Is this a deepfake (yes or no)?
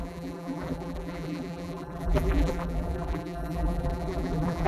yes